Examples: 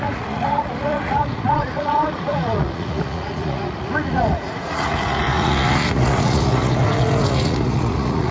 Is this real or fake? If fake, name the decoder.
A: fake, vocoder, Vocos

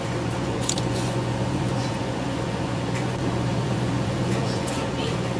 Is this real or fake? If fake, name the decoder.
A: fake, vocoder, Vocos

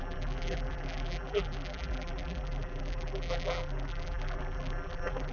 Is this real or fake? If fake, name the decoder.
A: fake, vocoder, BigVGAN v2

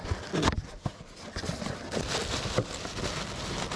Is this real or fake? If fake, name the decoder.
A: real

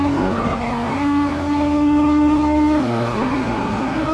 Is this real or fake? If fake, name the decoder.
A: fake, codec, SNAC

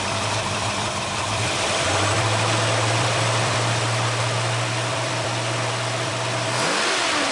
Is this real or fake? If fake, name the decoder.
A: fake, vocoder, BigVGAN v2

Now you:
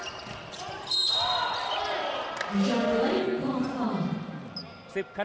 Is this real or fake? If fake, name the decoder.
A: real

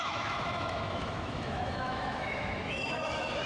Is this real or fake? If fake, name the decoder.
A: fake, autoencoder, DAC-VAE